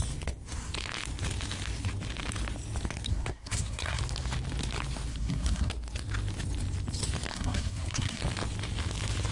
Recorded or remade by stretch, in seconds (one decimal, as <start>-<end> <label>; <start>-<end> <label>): 0.0-3.1 recorded; 3.1-4.0 remade; 4.0-5.1 recorded; 5.1-5.7 remade; 5.7-7.3 recorded; 7.3-8.2 remade; 8.2-9.3 recorded